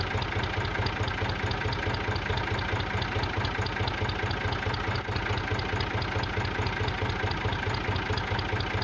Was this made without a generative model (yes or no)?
yes